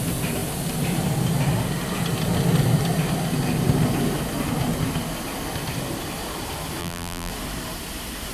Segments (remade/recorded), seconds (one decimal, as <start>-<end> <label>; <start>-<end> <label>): 0.0-6.8 recorded; 6.8-7.3 remade; 7.3-8.3 recorded